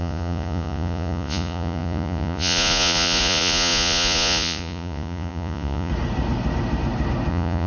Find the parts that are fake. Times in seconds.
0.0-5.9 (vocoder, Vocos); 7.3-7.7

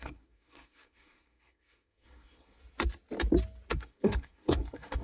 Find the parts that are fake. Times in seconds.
0.0-2.6 (codec, SNAC); 3.7-5.0